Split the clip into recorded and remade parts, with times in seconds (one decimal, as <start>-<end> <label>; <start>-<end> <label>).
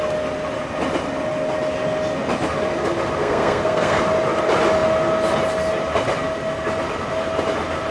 0.0-3.2 recorded; 3.2-4.0 remade; 4.0-7.9 recorded